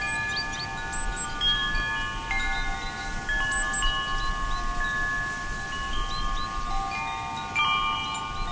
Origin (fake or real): real